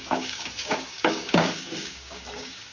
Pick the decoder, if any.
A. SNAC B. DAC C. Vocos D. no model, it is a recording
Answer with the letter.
B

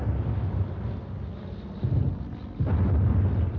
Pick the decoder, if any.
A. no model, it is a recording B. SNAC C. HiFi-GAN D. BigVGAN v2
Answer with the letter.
A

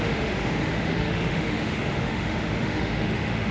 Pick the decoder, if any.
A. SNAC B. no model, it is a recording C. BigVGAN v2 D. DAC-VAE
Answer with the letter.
D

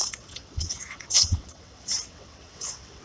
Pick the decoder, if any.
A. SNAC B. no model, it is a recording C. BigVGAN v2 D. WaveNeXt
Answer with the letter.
D